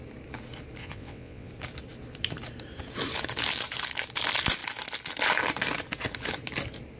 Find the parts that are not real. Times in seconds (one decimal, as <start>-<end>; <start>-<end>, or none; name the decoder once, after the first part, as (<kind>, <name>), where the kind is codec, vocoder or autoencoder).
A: 0.8-1.5 (vocoder, WaveNeXt)